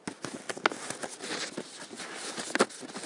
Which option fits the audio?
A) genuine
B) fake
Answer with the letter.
A